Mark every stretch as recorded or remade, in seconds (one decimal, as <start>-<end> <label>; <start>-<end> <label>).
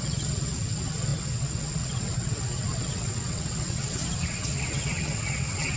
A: 0.0-5.8 remade